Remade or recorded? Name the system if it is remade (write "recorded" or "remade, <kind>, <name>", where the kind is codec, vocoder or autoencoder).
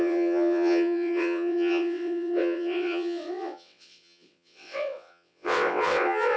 remade, vocoder, WaveNeXt